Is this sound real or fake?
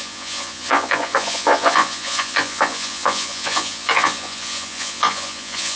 fake